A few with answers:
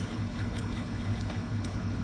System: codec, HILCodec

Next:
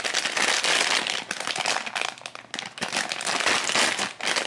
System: none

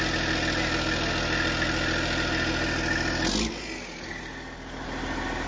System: none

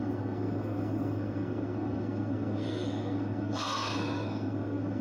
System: codec, SNAC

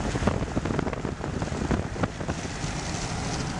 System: none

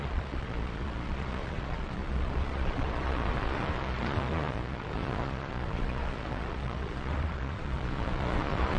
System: vocoder, Vocos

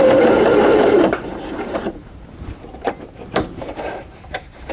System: vocoder, BigVGAN v2